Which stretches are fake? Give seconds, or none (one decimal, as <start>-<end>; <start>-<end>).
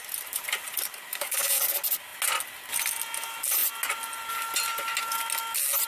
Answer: 1.1-1.6